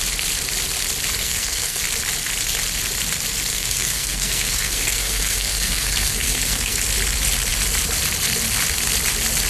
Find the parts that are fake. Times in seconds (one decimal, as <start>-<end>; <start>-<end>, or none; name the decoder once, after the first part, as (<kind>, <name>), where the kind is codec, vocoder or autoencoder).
1.2-1.8 (codec, SNAC); 3.5-6.8